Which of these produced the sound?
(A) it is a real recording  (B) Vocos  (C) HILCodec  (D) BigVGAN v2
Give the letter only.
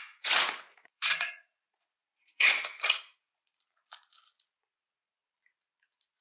B